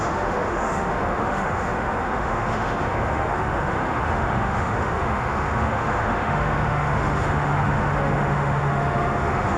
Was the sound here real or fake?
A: fake